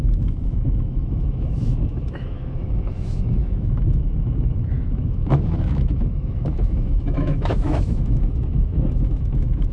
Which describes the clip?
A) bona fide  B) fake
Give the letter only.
B